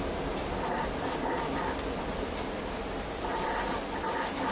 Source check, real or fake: real